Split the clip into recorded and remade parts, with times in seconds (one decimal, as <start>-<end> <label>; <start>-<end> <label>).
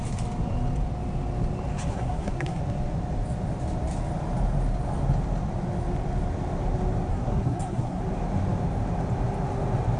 0.0-1.9 recorded; 1.9-2.6 remade; 2.6-7.1 recorded; 7.1-8.0 remade; 8.0-10.0 recorded